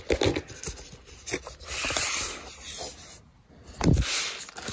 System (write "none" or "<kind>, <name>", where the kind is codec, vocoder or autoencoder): none